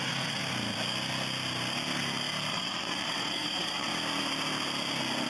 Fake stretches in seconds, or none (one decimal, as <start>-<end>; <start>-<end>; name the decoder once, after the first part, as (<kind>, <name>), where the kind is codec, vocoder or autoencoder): 0.0-0.4 (vocoder, WaveNeXt); 2.5-3.9